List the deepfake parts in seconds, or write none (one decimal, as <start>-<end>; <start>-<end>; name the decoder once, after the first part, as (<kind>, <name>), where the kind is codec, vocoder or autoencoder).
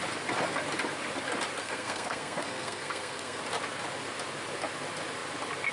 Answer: 1.6-3.4 (codec, SNAC)